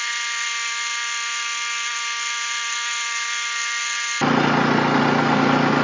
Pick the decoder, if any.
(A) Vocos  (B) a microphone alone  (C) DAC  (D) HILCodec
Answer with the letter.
B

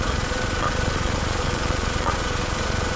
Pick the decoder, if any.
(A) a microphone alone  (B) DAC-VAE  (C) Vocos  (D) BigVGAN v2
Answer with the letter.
C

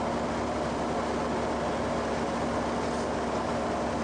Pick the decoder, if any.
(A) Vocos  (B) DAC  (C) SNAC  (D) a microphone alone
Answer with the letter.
D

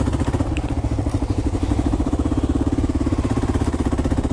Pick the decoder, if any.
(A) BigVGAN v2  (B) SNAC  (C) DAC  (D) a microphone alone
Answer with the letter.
D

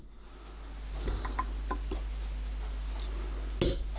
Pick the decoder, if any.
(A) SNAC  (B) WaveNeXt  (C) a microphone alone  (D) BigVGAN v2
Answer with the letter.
C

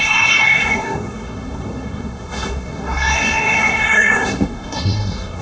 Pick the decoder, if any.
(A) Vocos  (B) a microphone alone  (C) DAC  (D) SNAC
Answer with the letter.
D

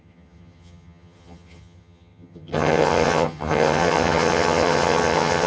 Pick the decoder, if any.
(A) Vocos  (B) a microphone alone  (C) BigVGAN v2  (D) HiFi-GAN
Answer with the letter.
D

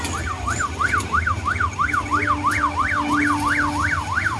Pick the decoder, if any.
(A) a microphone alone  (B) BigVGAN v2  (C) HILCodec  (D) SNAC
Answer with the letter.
A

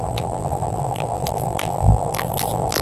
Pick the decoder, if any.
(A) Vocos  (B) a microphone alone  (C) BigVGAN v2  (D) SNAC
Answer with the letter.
C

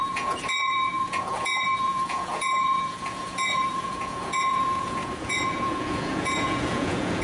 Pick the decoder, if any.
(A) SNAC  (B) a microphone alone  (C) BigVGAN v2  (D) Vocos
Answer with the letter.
D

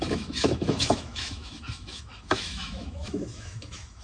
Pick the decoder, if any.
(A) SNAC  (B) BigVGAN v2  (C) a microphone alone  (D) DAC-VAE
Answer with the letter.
D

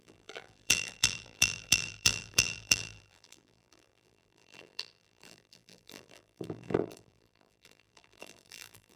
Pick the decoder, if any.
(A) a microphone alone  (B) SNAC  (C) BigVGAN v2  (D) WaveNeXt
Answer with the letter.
C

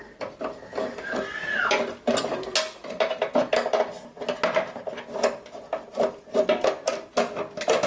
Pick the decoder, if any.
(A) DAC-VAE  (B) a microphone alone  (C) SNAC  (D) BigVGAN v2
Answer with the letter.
B